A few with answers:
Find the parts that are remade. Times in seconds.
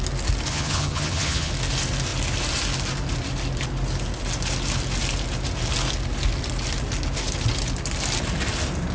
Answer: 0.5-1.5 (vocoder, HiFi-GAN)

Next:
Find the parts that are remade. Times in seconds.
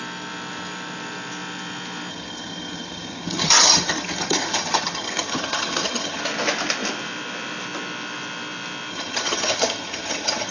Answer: 2.1-6.2 (vocoder, HiFi-GAN); 8.9-10.5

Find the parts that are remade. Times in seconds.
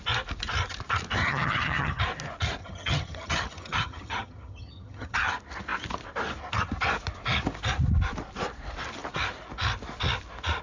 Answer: 1.2-2.0 (vocoder, HiFi-GAN); 2.6-5.3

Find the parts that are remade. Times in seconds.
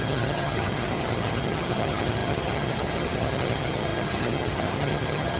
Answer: 0.0-5.4 (vocoder, HiFi-GAN)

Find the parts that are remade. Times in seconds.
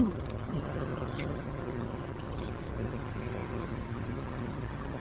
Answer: 0.0-5.0 (vocoder, HiFi-GAN)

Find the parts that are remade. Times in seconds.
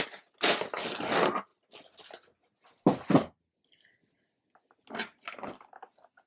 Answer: none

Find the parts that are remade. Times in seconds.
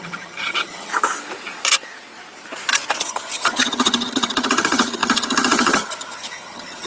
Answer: 0.0-0.9 (vocoder, HiFi-GAN); 3.0-6.9